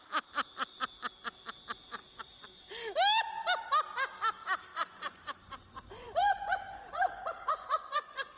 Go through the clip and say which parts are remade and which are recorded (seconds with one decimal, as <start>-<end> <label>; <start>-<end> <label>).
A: 0.0-2.0 recorded; 2.0-2.6 remade; 2.6-4.7 recorded; 4.7-8.4 remade